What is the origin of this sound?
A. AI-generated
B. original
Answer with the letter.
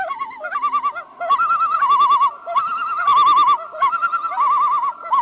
B